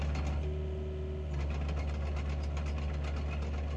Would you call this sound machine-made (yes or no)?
no